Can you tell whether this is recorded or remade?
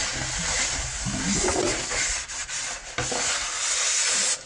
recorded